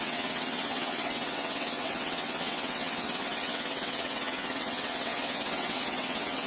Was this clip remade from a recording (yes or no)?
yes